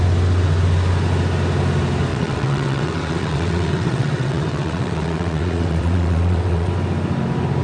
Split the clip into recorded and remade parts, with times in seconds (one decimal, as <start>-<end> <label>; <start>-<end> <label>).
0.0-2.1 recorded; 2.1-6.7 remade; 6.7-7.6 recorded